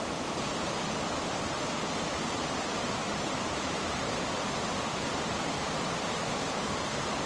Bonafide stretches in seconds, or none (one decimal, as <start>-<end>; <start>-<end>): 0.0-3.0; 4.2-7.3